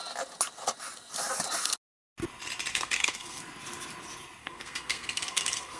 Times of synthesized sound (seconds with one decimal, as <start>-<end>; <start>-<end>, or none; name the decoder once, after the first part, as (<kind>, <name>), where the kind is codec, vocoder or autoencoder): 2.7-3.4 (codec, SNAC); 4.4-5.8